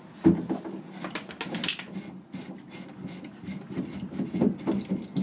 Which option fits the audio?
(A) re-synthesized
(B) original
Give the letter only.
B